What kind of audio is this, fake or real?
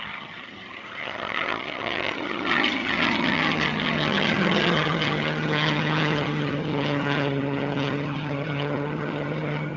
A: fake